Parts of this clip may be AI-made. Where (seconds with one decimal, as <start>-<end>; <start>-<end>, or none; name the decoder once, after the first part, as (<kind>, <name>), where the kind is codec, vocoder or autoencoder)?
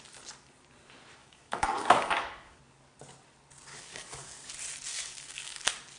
1.2-2.6 (codec, DAC); 3.7-4.5; 4.9-5.6